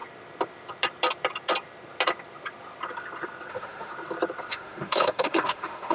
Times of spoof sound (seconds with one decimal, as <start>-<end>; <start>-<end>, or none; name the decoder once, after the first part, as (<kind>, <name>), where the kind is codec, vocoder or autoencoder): 3.5-3.9 (autoencoder, DAC-VAE); 4.5-5.9

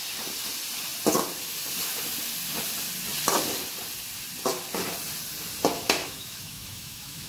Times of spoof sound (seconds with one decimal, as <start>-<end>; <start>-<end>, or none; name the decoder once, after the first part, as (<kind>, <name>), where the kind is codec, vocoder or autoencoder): 6.0-7.3 (autoencoder, DAC-VAE)

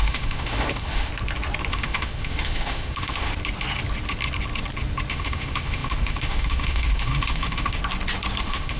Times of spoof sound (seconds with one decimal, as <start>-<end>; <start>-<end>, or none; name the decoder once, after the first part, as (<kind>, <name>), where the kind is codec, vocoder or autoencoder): 0.0-1.1 (autoencoder, DAC-VAE); 1.7-3.3; 5.1-7.8; 8.4-8.8

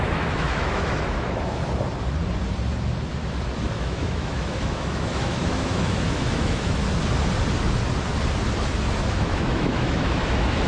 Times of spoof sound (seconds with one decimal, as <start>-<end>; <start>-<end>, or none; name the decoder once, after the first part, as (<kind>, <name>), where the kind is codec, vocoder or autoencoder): 0.0-1.6 (autoencoder, DAC-VAE); 3.6-6.8; 9.1-10.7